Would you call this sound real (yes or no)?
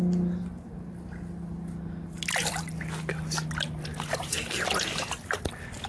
yes